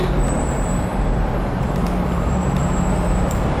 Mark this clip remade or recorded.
remade